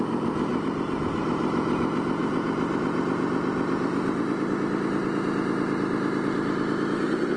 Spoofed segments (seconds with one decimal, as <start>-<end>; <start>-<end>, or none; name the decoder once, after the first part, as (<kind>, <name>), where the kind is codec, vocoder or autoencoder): 0.5-1.2 (vocoder, BigVGAN v2); 2.2-2.8